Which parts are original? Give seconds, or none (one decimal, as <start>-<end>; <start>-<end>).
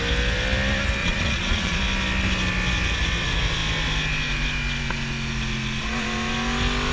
0.0-1.0; 1.8-6.9